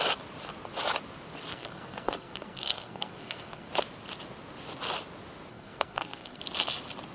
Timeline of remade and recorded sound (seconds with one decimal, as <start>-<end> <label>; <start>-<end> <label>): 0.0-1.5 recorded; 1.5-3.7 remade; 3.7-5.5 recorded; 5.5-6.4 remade; 6.4-7.1 recorded